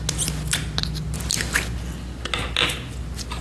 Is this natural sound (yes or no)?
yes